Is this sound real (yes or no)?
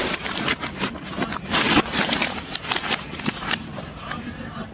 no